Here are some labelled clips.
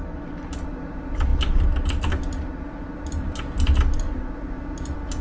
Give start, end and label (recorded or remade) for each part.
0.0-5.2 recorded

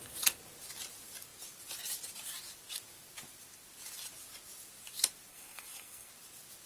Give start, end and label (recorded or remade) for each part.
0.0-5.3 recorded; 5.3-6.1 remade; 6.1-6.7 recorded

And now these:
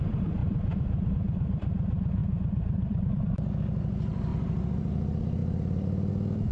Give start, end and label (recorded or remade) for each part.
0.0-6.5 remade